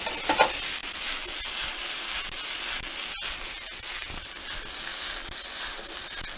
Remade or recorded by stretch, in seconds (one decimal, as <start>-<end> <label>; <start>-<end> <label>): 0.0-6.4 recorded